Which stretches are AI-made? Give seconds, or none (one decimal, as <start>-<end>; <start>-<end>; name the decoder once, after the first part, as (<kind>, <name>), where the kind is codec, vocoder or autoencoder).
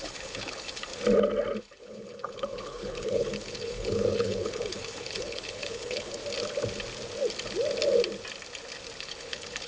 0.0-0.9 (codec, HILCodec); 1.6-6.2; 9.0-9.7